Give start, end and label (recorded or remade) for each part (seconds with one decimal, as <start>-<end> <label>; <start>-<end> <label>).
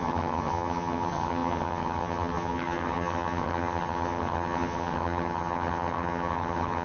0.0-6.8 remade